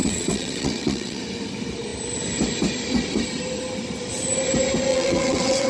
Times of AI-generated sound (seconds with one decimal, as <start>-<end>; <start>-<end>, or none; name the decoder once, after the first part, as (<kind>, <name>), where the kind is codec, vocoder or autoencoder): 0.0-1.2 (vocoder, WaveNeXt); 4.9-5.7